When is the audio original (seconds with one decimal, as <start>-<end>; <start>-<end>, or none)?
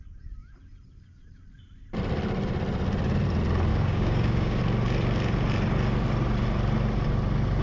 0.0-3.7; 4.6-7.6